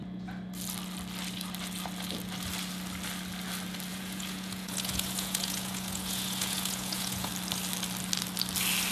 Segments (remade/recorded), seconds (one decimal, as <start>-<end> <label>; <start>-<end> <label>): 0.0-3.9 recorded; 3.9-7.3 remade; 7.3-8.9 recorded